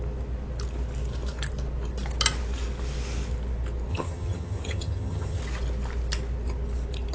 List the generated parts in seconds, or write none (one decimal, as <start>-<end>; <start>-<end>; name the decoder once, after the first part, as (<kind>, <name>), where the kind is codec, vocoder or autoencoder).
3.9-5.4 (vocoder, HiFi-GAN)